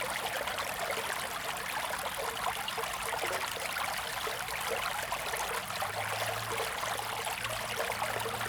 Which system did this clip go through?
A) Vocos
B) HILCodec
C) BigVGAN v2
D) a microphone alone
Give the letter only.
D